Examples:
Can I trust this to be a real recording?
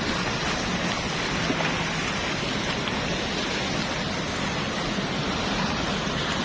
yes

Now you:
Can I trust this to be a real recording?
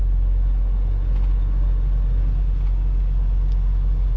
yes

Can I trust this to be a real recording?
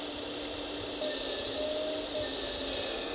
yes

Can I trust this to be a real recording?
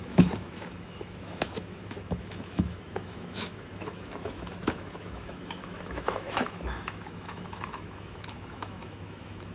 no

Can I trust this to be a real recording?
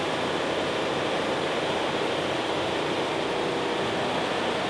yes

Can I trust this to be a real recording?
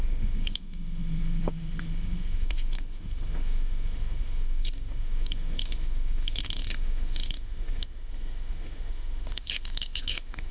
no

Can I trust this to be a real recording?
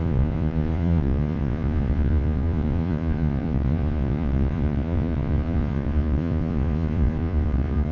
no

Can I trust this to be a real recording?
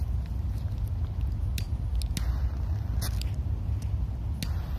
yes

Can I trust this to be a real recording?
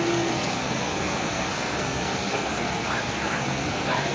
no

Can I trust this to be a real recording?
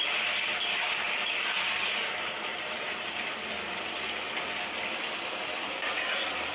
no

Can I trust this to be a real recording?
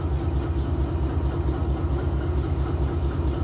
yes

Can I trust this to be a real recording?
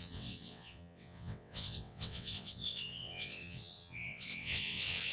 no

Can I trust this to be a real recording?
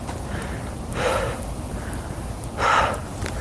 no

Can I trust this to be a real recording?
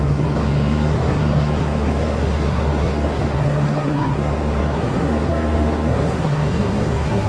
no